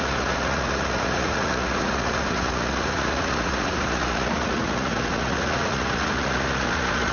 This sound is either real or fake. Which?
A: fake